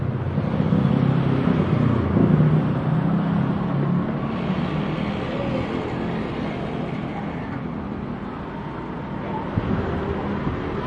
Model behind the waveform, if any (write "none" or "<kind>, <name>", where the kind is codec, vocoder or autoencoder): none